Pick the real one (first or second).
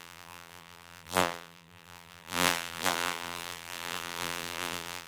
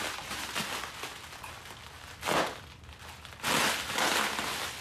second